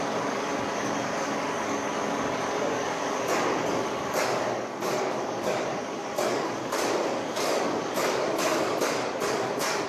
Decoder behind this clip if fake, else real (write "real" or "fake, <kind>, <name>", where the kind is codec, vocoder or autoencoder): fake, codec, DAC